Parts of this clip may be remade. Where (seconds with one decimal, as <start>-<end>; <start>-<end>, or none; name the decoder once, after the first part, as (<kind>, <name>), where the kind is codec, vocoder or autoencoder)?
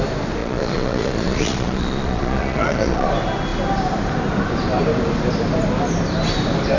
0.4-3.1 (vocoder, Vocos)